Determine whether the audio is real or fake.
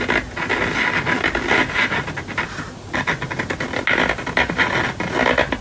real